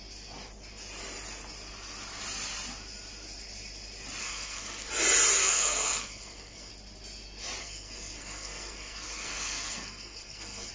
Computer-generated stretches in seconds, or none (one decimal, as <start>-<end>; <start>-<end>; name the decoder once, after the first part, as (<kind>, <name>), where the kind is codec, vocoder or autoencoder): 4.2-4.9 (codec, SNAC); 5.4-6.7; 7.6-10.7